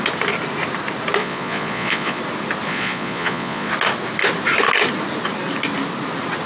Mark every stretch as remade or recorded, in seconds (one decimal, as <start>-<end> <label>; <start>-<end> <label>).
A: 0.0-1.2 recorded; 1.2-2.2 remade; 2.2-2.7 recorded; 2.7-3.7 remade; 3.7-6.5 recorded